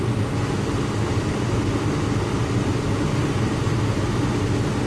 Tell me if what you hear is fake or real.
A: real